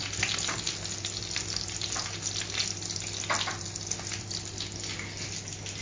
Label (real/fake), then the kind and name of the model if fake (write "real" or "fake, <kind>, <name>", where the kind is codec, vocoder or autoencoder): real